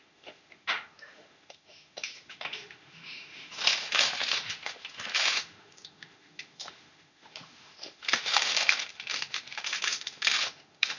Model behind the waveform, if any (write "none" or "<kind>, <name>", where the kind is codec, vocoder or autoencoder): autoencoder, DAC-VAE